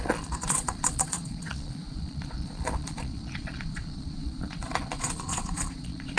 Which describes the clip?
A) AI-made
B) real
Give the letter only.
A